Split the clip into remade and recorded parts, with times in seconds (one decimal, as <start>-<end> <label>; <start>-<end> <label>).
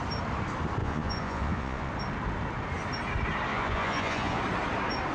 0.0-0.8 recorded; 0.8-1.9 remade; 1.9-3.5 recorded; 3.5-4.4 remade; 4.4-5.1 recorded